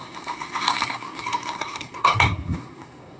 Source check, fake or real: fake